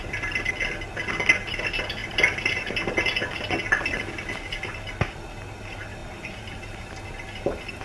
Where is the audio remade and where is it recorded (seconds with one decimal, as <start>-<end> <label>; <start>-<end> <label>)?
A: 0.0-2.0 recorded; 2.0-2.7 remade; 2.7-6.0 recorded; 6.0-6.8 remade; 6.8-7.8 recorded